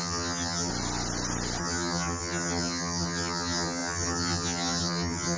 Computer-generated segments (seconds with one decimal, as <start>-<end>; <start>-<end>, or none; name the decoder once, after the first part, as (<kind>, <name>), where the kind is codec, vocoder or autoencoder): 0.0-0.7 (vocoder, HiFi-GAN); 1.6-5.4